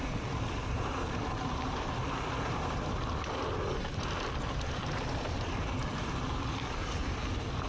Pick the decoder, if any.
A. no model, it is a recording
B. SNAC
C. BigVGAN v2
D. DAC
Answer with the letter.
A